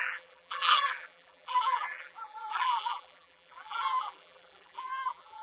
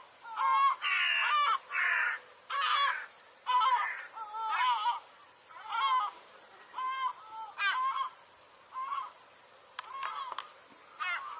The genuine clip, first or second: second